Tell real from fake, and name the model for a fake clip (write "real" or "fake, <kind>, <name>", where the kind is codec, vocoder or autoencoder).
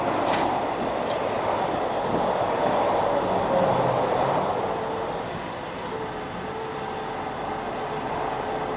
real